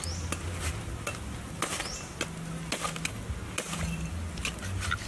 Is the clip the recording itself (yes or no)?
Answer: yes